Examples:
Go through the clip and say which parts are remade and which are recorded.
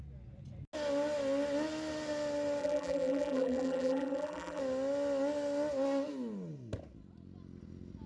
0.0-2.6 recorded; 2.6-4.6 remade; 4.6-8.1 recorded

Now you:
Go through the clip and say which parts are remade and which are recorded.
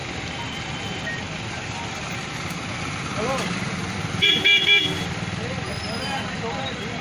0.0-7.0 recorded